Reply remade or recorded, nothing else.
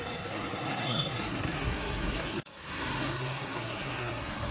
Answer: remade